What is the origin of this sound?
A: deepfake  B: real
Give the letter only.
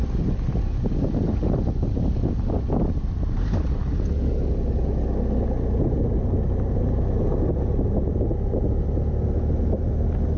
B